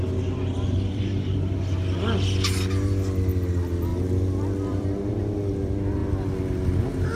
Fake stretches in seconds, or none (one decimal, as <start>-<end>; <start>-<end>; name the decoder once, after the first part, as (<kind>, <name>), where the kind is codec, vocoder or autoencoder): 3.9-5.1 (vocoder, BigVGAN v2)